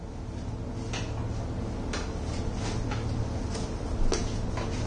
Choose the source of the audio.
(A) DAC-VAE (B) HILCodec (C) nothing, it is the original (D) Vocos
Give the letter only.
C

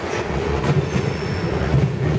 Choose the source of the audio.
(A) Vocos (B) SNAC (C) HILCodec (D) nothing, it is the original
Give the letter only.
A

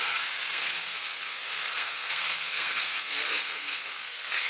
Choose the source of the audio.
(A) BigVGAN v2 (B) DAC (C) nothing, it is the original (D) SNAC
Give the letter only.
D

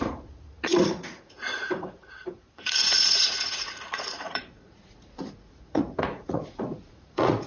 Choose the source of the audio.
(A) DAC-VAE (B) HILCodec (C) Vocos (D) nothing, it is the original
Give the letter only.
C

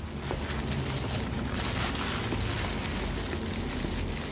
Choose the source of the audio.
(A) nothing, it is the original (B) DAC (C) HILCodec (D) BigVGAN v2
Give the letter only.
A